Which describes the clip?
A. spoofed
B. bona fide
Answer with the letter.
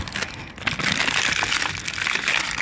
B